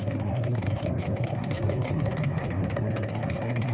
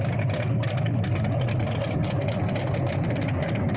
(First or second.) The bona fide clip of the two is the second